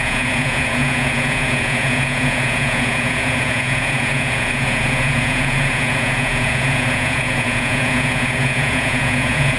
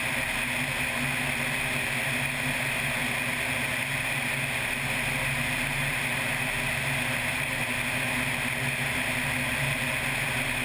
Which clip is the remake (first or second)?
first